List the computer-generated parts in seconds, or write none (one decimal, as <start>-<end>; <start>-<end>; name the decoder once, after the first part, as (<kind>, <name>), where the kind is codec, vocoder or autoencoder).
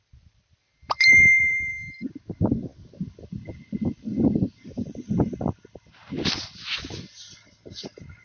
0.6-1.7 (vocoder, BigVGAN v2); 4.1-4.8